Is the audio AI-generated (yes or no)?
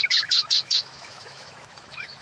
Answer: yes